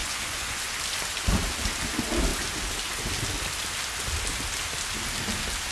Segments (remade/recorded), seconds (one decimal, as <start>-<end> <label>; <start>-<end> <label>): 0.0-0.7 remade; 0.7-5.7 recorded